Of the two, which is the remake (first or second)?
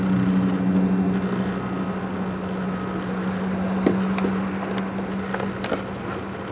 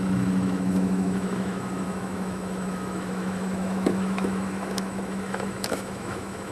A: second